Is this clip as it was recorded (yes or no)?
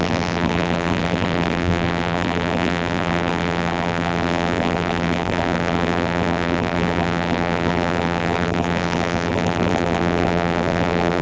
no